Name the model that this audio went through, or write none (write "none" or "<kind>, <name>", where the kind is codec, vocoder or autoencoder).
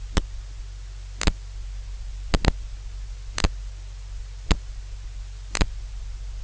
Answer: none